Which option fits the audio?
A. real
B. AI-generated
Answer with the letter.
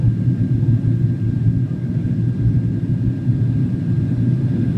A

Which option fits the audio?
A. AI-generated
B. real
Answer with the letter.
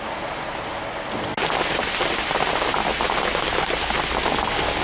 B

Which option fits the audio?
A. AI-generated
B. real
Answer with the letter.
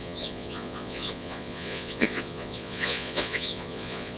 A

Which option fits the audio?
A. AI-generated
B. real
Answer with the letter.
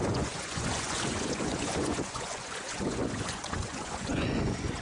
A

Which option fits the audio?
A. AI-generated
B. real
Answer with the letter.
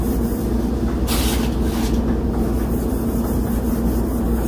B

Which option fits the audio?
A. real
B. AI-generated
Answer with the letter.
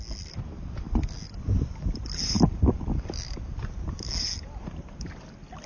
A